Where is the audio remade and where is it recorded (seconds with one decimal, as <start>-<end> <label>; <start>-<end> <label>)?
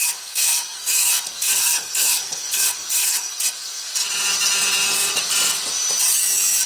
0.0-3.9 remade; 3.9-6.7 recorded